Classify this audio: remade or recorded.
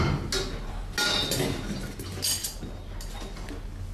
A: recorded